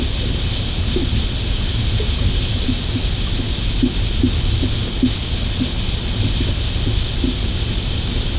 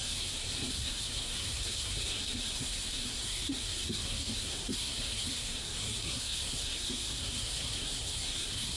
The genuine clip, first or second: first